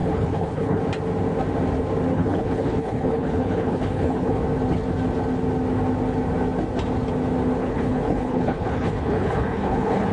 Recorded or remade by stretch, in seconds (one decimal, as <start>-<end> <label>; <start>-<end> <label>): 0.0-0.8 remade; 0.8-2.1 recorded; 2.1-4.4 remade; 4.4-7.6 recorded; 7.6-10.1 remade